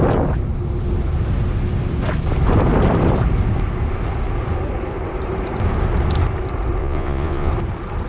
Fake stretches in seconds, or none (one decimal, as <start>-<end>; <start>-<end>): 6.8-7.5